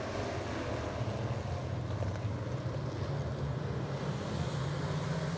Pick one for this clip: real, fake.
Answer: real